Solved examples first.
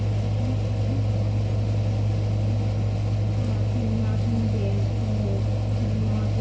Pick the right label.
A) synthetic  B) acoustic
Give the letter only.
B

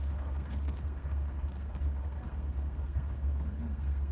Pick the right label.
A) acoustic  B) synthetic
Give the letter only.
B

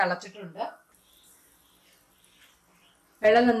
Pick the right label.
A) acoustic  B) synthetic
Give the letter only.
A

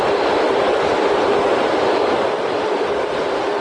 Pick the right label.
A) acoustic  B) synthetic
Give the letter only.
B